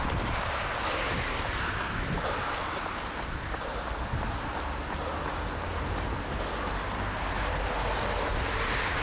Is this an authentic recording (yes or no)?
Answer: yes